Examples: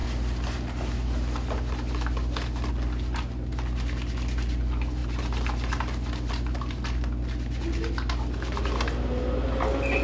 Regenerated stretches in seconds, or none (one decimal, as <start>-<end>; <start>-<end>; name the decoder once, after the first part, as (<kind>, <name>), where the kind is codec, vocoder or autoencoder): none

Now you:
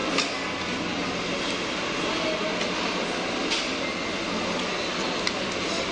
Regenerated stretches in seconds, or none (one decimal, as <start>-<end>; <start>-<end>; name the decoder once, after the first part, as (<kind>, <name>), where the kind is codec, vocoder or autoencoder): none

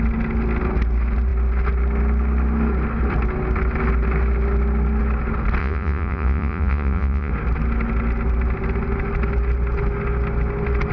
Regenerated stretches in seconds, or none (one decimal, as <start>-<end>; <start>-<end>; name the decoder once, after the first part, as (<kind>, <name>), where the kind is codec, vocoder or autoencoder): 5.6-7.3 (vocoder, Vocos)

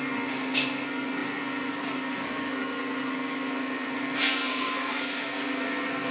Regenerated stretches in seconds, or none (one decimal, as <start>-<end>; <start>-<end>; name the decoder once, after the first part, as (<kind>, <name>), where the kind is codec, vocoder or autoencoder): 0.0-6.1 (codec, SNAC)

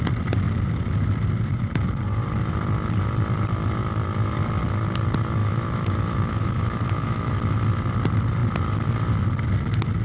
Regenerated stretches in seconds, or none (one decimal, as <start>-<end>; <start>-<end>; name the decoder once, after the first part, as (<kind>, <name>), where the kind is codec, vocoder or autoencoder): 5.4-7.3 (autoencoder, DAC-VAE)

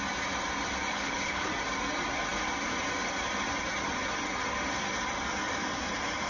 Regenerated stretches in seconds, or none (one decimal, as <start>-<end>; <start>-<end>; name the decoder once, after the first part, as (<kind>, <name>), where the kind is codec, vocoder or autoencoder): 0.9-1.5 (codec, HILCodec)

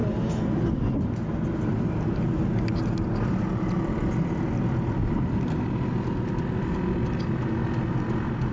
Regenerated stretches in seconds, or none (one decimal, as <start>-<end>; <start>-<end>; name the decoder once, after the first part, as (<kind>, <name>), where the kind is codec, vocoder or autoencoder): none

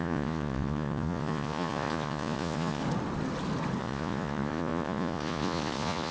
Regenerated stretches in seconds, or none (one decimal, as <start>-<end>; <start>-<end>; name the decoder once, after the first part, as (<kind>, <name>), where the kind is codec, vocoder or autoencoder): 0.0-2.8 (vocoder, Vocos); 3.8-6.1